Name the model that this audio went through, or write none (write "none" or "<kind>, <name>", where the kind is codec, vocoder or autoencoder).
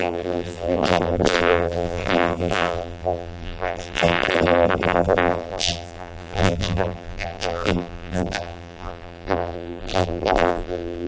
vocoder, BigVGAN v2